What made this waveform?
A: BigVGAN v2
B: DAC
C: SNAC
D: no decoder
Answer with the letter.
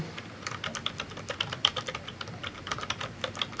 D